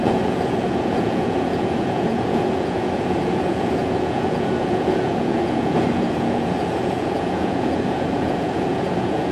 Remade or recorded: remade